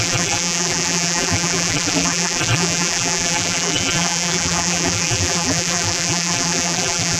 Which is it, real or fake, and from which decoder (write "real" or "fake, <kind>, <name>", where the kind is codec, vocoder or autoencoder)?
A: fake, vocoder, BigVGAN v2